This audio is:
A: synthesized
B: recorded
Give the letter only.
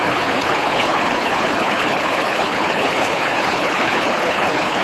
A